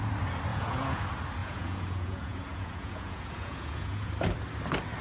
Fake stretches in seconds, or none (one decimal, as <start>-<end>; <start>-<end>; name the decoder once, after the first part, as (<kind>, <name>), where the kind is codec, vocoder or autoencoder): 0.5-1.0 (vocoder, Vocos); 1.4-4.1